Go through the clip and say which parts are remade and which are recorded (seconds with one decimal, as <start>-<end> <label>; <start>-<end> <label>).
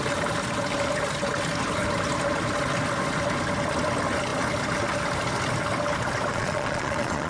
0.0-6.3 recorded; 6.3-7.3 remade